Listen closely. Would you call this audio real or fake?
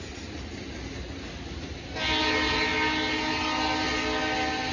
real